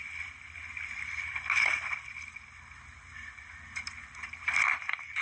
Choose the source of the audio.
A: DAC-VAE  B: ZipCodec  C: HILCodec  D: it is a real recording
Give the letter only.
D